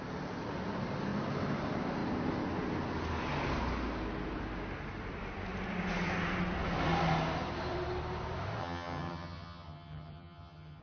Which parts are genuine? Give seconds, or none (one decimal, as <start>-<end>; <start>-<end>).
0.0-8.6

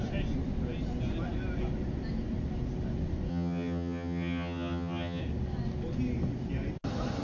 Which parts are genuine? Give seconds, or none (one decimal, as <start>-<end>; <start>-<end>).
0.0-3.3; 5.2-7.2

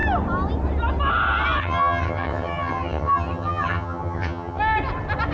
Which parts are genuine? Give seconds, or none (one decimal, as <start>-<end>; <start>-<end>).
0.0-1.6; 4.6-5.3

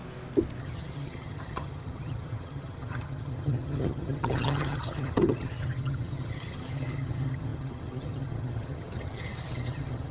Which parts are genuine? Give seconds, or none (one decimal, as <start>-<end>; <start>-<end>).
0.0-0.6

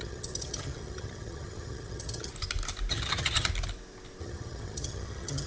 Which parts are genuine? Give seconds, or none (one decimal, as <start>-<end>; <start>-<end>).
2.3-2.9; 3.5-4.2

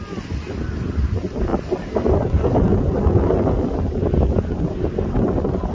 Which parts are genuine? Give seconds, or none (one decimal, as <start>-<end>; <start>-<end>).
0.0-5.7

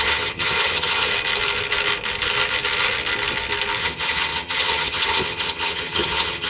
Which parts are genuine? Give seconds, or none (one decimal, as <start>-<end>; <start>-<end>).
1.1-3.8

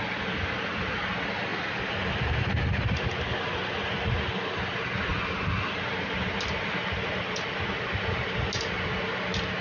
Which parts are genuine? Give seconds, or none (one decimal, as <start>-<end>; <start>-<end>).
0.0-9.6